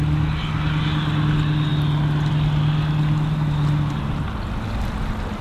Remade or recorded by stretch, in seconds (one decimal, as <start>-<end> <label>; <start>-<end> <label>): 0.0-5.4 recorded